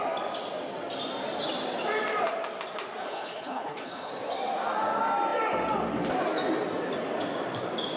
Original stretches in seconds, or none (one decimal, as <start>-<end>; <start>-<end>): 0.0-3.0; 4.1-8.0

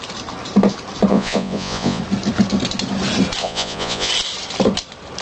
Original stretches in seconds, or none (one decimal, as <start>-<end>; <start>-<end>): 0.0-1.1; 2.0-3.4; 4.1-5.2

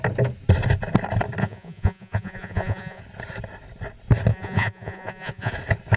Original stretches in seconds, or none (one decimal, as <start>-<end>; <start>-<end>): 0.0-1.4; 3.0-4.3; 5.5-6.0